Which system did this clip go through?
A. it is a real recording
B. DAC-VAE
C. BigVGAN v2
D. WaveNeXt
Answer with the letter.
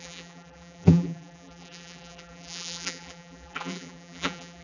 C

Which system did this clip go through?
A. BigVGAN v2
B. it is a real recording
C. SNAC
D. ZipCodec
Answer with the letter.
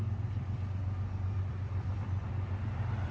A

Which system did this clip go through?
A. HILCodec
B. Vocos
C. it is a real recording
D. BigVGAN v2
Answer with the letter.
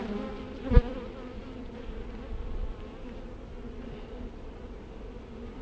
D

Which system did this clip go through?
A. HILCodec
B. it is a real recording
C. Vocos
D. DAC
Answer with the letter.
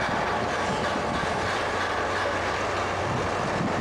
B